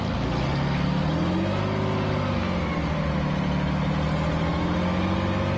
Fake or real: real